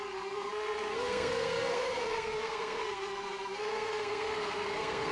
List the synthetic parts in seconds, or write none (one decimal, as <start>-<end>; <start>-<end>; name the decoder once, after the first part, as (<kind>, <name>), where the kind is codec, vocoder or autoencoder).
0.0-5.1 (codec, SNAC)